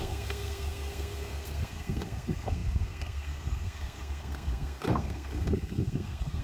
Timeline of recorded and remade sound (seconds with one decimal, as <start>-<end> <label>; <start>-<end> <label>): 0.0-6.4 remade